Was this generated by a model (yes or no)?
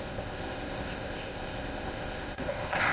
yes